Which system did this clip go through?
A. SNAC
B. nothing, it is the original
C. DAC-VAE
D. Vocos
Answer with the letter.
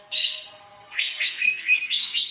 A